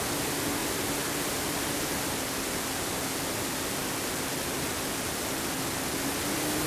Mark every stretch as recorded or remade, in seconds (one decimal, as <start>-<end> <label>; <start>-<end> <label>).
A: 0.0-6.7 recorded